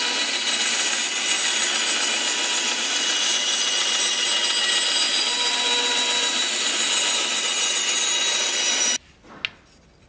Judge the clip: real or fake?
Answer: real